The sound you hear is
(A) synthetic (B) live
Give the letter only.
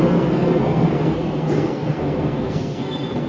A